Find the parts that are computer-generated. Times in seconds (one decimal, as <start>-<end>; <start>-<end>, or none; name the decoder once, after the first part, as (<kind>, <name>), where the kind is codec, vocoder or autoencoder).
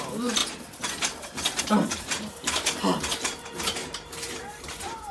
0.0-0.4 (vocoder, BigVGAN v2); 1.6-5.1